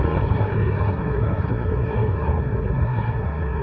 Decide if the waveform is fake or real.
fake